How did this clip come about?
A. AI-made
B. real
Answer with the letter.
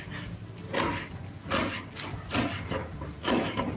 B